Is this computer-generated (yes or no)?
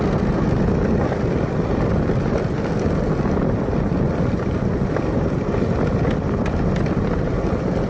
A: no